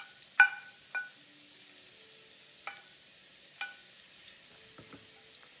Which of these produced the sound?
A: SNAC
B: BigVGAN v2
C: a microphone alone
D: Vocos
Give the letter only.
C